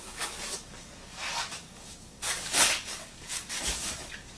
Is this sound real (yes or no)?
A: no